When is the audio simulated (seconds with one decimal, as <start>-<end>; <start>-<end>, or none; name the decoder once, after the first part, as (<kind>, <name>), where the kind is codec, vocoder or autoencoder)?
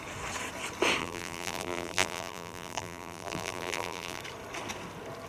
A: 1.0-4.2 (vocoder, BigVGAN v2)